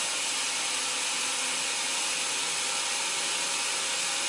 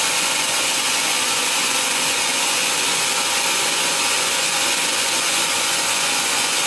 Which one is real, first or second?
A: first